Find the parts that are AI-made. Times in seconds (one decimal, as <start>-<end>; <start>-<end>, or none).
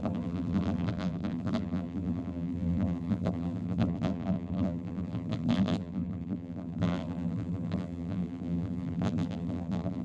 0.0-10.0